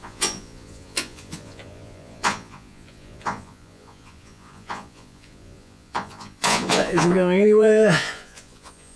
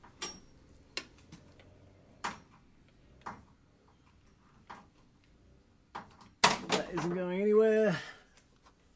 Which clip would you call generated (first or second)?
first